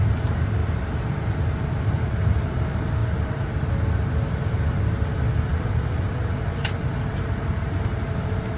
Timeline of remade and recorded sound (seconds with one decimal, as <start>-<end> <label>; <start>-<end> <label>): 0.0-3.0 recorded; 3.0-3.7 remade; 3.7-8.6 recorded